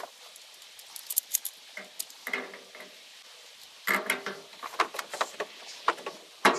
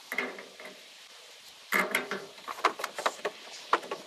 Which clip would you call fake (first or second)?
second